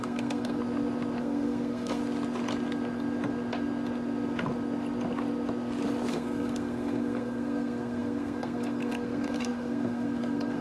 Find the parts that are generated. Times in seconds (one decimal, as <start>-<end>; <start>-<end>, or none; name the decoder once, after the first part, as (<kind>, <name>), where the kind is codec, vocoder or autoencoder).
0.0-0.6 (codec, SNAC); 1.2-2.0; 6.1-10.6